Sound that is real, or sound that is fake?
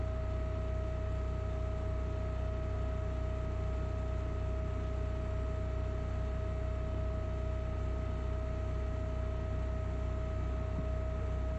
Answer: real